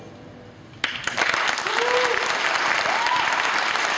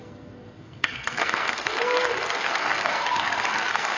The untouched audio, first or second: first